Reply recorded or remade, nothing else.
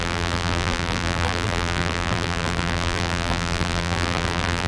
remade